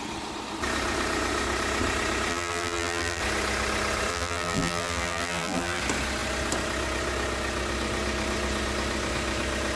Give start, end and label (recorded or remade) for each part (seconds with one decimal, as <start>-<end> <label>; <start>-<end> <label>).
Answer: 0.0-2.3 recorded; 2.3-3.2 remade; 3.2-4.1 recorded; 4.1-5.8 remade; 5.8-9.8 recorded